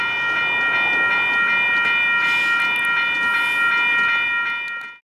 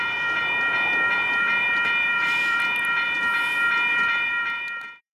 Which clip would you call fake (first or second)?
second